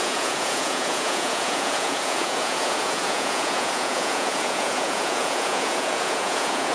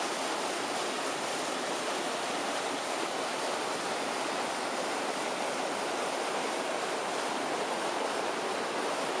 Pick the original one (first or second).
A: second